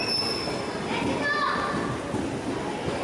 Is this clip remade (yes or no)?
no